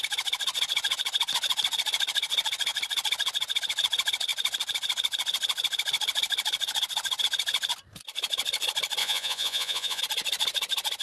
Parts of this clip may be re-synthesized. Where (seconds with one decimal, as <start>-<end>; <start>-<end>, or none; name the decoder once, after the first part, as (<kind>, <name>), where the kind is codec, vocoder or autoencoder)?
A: 9.0-10.0 (vocoder, Vocos)